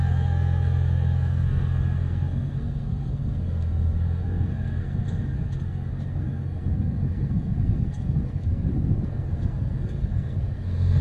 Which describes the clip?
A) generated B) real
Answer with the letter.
A